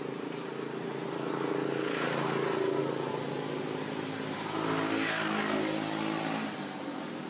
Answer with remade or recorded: recorded